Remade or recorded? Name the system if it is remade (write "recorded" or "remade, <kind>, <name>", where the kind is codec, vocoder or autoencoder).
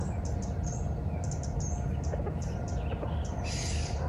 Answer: recorded